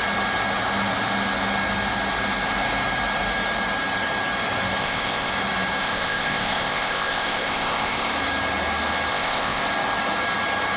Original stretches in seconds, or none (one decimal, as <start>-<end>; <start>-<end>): 0.0-4.8; 5.3-5.8; 8.1-9.1; 9.6-10.8